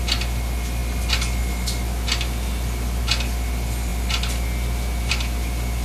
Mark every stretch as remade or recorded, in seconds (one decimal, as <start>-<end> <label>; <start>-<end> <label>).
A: 0.0-5.8 recorded